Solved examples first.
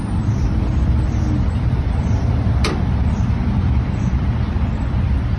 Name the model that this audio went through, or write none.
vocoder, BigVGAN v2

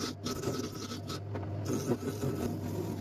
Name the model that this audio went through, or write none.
none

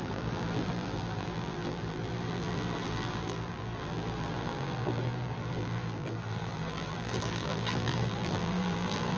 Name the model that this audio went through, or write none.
vocoder, BigVGAN v2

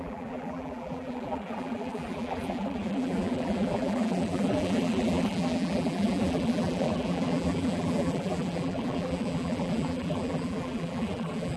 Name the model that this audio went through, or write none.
vocoder, BigVGAN v2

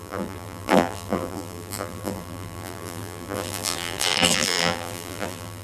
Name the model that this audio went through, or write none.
vocoder, BigVGAN v2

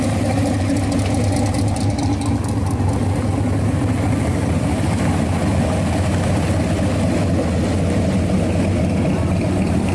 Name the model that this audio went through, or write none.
none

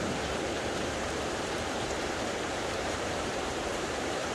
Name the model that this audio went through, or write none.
vocoder, BigVGAN v2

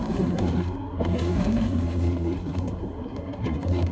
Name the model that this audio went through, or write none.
codec, SNAC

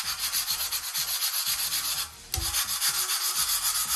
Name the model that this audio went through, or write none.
none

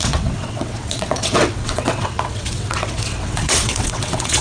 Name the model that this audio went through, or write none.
vocoder, WaveNeXt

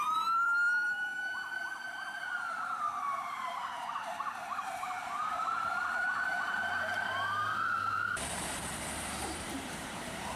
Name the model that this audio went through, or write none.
vocoder, BigVGAN v2